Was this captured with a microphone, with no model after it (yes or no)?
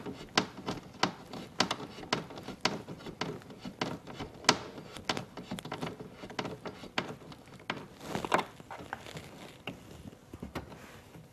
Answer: yes